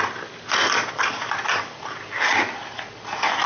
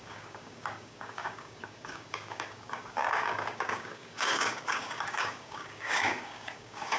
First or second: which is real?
first